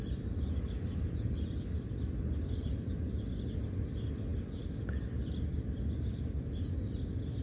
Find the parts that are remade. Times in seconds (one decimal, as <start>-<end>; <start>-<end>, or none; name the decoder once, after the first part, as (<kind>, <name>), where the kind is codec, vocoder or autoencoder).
none